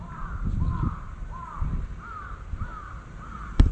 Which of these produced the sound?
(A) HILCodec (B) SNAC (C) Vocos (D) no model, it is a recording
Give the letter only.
D